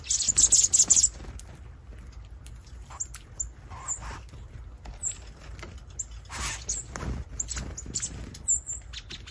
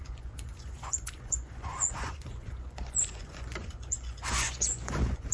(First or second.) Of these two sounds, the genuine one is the first